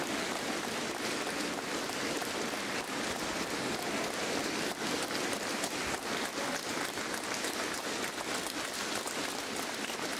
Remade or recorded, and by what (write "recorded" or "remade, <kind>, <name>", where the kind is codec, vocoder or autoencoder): recorded